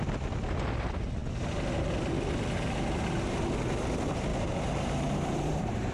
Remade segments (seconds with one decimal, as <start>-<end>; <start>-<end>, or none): 4.3-5.9